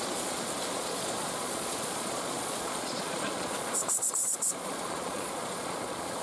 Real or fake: fake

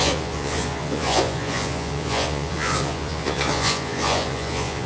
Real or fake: fake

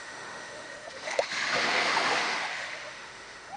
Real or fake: fake